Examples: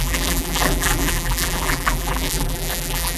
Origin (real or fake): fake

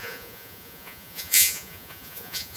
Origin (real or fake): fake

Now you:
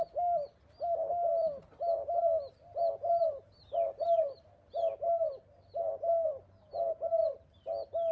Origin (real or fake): real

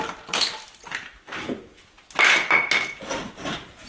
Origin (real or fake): real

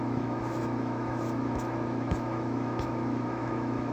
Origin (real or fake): fake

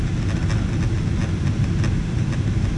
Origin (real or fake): real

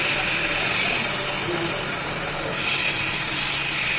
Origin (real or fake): real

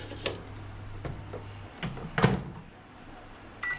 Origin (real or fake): real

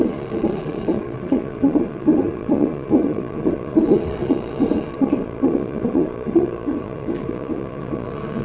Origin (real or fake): fake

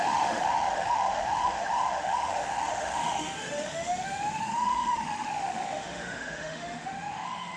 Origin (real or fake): fake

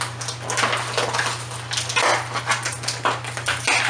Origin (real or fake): real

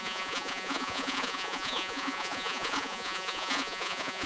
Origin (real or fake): fake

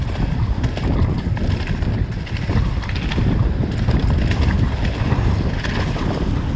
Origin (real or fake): real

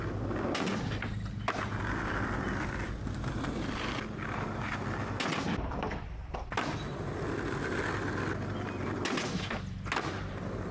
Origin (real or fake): real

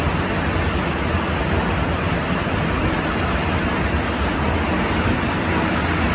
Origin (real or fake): real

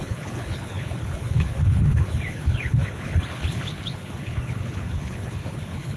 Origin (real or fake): fake